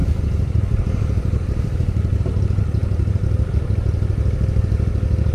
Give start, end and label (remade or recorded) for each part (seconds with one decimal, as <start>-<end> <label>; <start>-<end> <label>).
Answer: 0.0-2.4 remade; 2.4-5.3 recorded